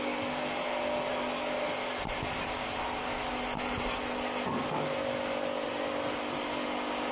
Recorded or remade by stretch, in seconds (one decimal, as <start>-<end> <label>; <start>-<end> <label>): 0.0-7.1 recorded